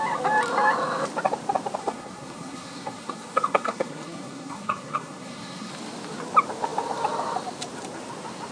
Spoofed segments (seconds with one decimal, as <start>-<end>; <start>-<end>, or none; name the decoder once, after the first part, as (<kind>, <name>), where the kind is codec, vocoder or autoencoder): 1.8-5.7 (codec, SNAC)